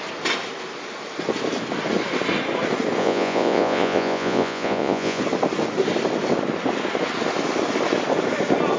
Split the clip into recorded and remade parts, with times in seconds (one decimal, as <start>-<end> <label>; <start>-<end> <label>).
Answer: 0.0-3.0 recorded; 3.0-5.2 remade; 5.2-8.8 recorded